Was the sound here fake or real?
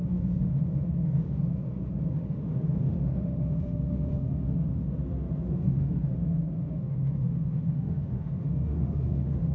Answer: fake